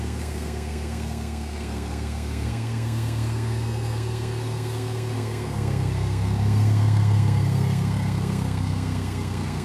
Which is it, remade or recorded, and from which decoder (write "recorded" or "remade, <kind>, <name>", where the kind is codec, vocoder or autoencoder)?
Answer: remade, codec, SNAC